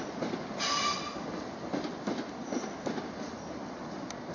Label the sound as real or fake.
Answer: real